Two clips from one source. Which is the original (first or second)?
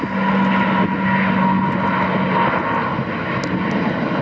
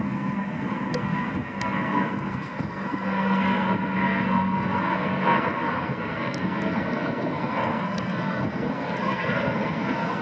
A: first